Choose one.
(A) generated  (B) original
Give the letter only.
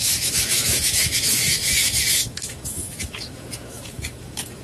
A